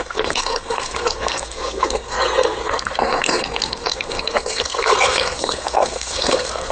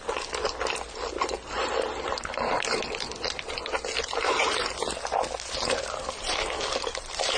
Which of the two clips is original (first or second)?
second